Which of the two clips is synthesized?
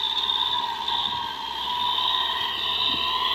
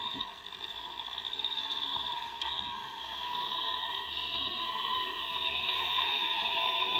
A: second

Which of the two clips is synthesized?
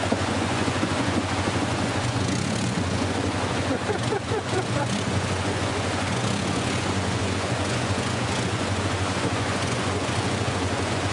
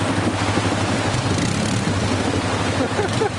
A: first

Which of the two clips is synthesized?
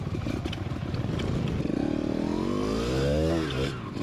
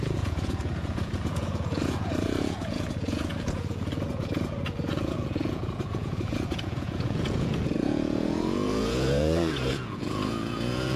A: second